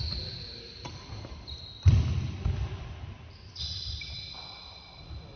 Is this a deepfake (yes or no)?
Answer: no